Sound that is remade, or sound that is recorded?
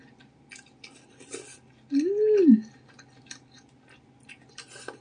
recorded